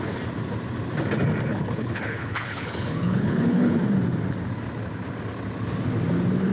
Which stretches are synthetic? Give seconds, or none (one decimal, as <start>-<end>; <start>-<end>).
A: 1.5-3.8

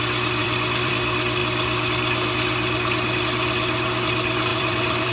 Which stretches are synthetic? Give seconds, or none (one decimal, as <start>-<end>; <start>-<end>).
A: 0.4-0.9; 4.5-5.1